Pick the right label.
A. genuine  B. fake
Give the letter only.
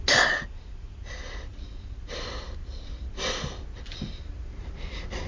A